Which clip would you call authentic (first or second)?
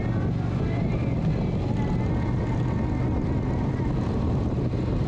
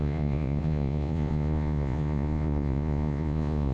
first